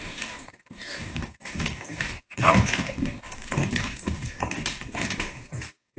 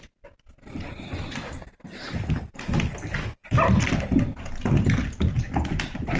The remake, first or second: first